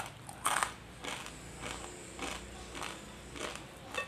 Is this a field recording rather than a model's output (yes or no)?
yes